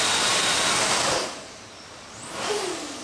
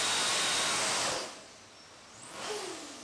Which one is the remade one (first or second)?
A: first